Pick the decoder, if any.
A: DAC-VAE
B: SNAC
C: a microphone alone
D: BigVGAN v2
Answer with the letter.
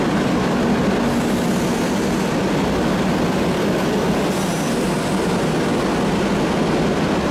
C